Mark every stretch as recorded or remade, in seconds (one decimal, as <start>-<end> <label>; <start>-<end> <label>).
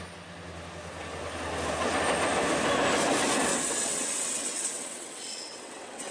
0.0-3.5 recorded; 3.5-6.1 remade